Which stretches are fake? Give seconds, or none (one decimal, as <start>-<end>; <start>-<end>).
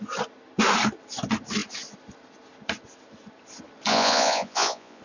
3.9-5.0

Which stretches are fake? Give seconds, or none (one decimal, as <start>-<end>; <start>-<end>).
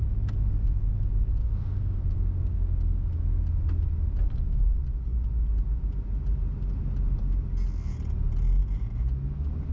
1.4-3.1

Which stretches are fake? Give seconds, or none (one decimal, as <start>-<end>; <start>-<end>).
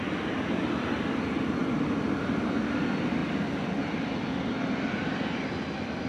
none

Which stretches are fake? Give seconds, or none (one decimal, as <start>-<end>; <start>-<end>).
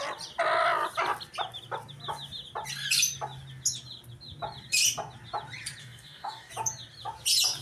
5.8-6.5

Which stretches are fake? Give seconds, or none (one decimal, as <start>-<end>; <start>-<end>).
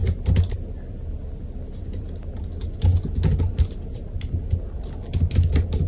none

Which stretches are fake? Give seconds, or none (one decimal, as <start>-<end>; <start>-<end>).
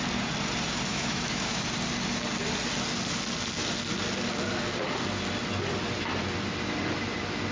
0.9-1.6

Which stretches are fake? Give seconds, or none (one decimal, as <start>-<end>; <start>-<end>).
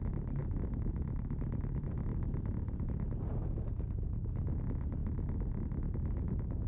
none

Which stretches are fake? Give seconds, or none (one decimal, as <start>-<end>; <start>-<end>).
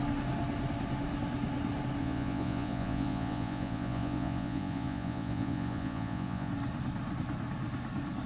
2.0-6.5